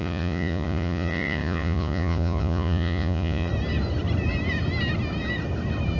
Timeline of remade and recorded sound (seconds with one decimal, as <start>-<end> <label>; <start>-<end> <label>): 0.0-3.5 remade; 3.5-6.0 recorded